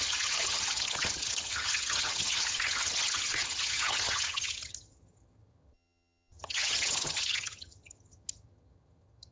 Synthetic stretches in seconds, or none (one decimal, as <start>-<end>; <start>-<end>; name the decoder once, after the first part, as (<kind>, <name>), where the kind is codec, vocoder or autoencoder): 0.0-9.3 (vocoder, HiFi-GAN)